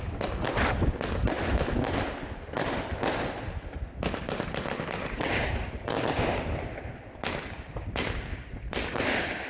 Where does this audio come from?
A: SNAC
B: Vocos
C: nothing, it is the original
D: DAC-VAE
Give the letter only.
C